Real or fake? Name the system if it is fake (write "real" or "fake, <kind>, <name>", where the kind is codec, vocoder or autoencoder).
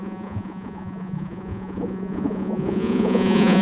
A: fake, vocoder, Vocos